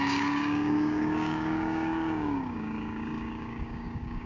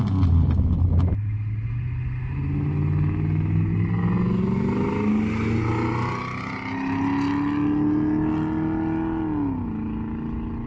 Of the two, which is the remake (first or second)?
first